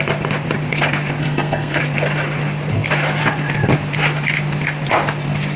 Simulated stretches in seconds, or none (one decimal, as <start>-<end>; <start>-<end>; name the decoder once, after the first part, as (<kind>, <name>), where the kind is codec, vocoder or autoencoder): 1.2-1.8 (codec, SNAC)

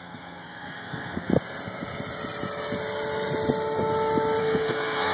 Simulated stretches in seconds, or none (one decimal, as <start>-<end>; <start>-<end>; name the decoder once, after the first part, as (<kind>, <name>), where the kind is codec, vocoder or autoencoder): 0.0-1.3 (codec, SNAC); 4.4-5.1

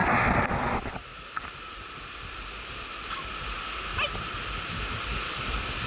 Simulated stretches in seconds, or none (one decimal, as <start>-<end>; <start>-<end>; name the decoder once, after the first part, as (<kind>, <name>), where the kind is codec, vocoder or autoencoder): none

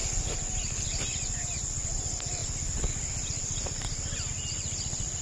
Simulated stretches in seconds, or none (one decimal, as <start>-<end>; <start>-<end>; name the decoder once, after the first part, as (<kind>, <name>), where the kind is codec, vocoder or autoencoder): none

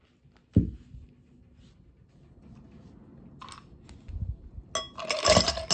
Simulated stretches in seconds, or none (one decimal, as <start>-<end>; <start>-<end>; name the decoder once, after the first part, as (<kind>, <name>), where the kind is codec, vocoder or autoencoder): none

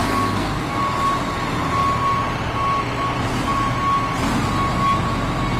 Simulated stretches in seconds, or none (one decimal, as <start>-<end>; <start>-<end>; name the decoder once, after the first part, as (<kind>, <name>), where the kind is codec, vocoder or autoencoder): 0.0-0.8 (codec, SNAC)

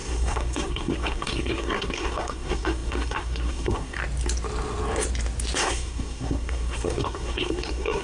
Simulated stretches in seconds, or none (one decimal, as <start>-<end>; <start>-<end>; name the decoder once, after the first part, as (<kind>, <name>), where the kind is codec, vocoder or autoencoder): 0.0-4.0 (codec, SNAC); 5.6-8.0

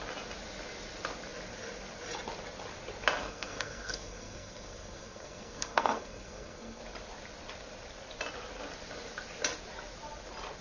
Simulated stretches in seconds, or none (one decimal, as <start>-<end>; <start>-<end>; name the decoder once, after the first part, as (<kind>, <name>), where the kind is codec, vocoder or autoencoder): 3.2-6.8 (codec, SNAC)